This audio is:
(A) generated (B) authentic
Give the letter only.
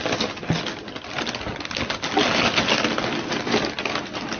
B